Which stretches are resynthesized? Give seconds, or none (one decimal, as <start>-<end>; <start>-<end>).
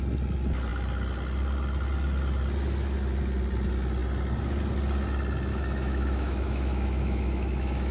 5.5-7.9